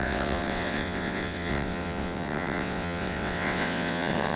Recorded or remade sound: remade